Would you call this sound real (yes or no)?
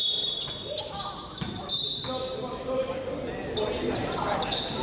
yes